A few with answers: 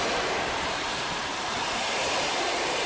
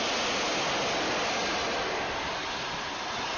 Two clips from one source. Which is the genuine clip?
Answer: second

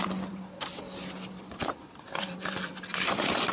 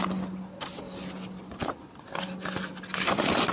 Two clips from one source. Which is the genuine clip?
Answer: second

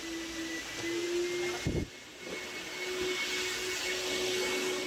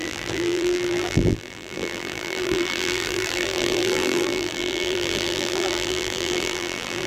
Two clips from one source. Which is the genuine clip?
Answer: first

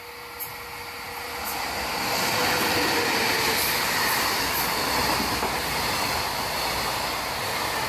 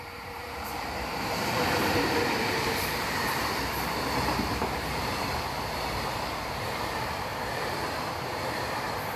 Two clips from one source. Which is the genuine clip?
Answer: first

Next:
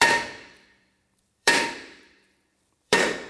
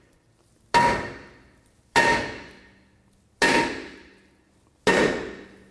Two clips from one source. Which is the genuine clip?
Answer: second